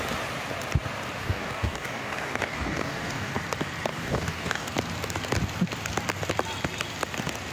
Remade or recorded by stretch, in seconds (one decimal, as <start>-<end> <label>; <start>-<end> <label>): 0.0-1.2 recorded; 1.2-3.3 remade; 3.3-3.9 recorded; 3.9-4.7 remade; 4.7-7.5 recorded